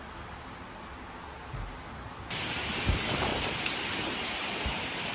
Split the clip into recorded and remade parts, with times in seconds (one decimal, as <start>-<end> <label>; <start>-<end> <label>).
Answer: 0.0-3.3 recorded; 3.3-4.5 remade; 4.5-5.1 recorded

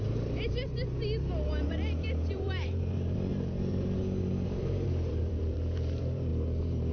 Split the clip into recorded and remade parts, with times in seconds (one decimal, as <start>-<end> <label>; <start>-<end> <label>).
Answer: 0.0-0.7 remade; 0.7-1.7 recorded; 1.7-6.9 remade

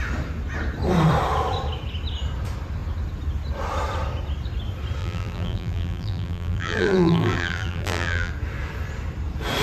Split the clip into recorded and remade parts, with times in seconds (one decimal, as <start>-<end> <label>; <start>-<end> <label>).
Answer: 0.0-5.0 recorded; 5.0-8.3 remade; 8.3-9.6 recorded

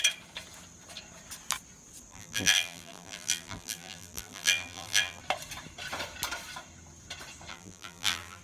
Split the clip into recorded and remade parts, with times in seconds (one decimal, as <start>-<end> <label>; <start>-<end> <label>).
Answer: 0.0-2.1 recorded; 2.1-5.2 remade; 5.2-7.5 recorded; 7.5-8.4 remade